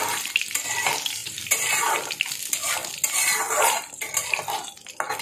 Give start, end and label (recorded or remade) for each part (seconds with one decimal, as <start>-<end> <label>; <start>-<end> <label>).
0.0-1.2 recorded; 1.2-1.9 remade; 1.9-5.2 recorded